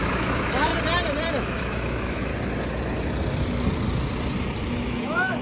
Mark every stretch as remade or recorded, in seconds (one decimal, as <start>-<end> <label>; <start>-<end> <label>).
0.0-0.7 remade; 0.7-1.3 recorded; 1.3-2.3 remade; 2.3-4.7 recorded; 4.7-5.4 remade